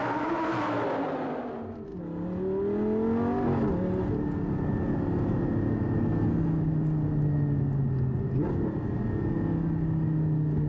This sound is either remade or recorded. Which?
recorded